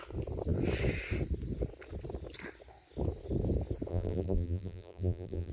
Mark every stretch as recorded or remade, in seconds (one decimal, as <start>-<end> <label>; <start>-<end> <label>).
0.0-3.9 recorded; 3.9-5.5 remade